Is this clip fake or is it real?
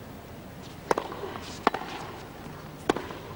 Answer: real